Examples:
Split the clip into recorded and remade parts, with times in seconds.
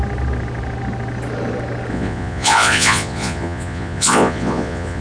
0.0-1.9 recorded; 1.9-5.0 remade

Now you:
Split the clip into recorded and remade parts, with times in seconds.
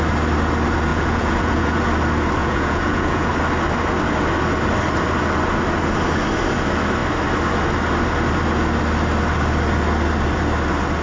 0.0-0.9 recorded; 0.9-1.8 remade; 1.8-2.4 recorded; 2.4-3.3 remade; 3.3-11.0 recorded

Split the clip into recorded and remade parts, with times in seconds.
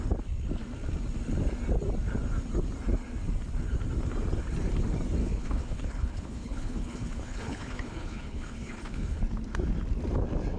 0.0-5.2 recorded; 5.2-9.2 remade; 9.2-10.6 recorded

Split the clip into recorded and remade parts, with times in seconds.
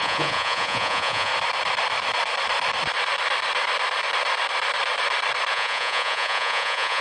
0.0-1.3 remade; 1.3-5.5 recorded; 5.5-7.0 remade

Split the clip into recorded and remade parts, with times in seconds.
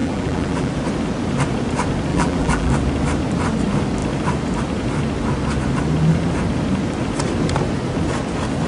0.0-0.7 remade; 0.7-2.1 recorded; 2.1-2.7 remade; 2.7-8.7 recorded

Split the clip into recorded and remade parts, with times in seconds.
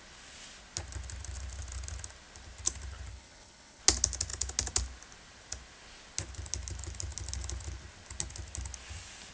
0.0-3.1 recorded; 3.1-3.8 remade; 3.8-9.3 recorded